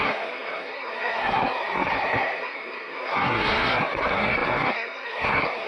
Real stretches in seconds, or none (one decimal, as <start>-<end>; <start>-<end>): none